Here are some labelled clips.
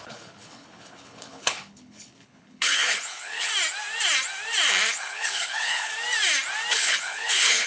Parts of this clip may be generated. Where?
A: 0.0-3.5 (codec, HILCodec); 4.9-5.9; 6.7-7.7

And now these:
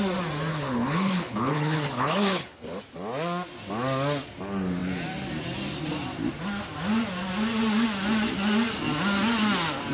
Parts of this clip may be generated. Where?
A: 0.5-2.8 (codec, HILCodec)